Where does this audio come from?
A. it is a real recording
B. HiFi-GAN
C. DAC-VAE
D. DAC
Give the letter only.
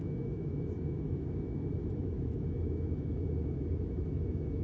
C